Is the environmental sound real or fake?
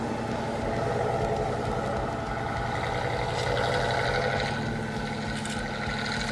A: real